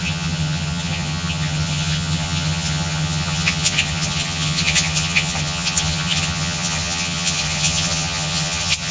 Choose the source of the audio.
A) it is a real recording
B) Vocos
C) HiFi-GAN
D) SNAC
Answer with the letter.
C